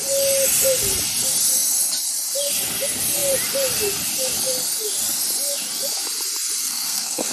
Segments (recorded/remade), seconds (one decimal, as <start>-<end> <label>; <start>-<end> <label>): 0.0-6.6 recorded; 6.6-7.3 remade